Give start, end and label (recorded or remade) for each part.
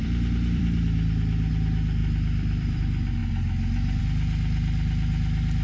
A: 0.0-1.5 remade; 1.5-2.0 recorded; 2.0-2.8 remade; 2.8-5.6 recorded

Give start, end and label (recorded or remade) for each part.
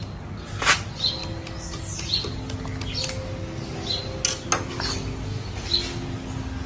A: 0.0-6.7 recorded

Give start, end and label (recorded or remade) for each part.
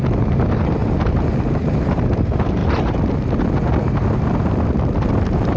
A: 0.0-2.6 remade; 2.6-5.0 recorded; 5.0-5.6 remade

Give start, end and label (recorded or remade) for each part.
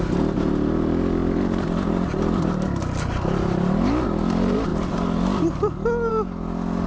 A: 0.0-6.9 recorded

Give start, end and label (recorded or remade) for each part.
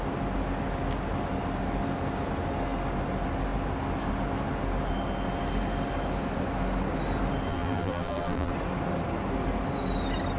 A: 0.0-7.5 recorded; 7.5-8.5 remade; 8.5-10.4 recorded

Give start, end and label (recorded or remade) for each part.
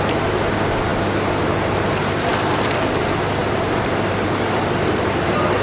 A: 0.0-3.4 recorded; 3.4-4.6 remade; 4.6-5.6 recorded